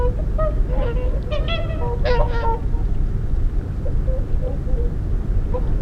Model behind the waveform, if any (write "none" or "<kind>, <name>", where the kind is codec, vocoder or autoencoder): none